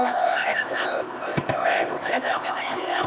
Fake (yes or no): yes